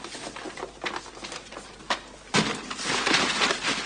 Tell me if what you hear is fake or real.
real